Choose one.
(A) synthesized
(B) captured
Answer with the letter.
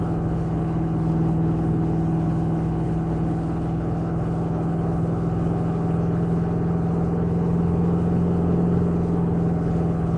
A